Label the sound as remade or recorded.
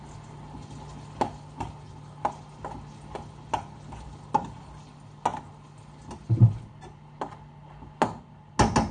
recorded